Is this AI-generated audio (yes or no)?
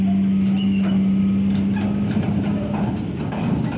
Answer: no